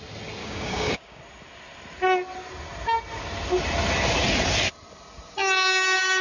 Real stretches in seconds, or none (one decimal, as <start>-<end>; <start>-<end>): 0.0-0.4; 1.2-6.2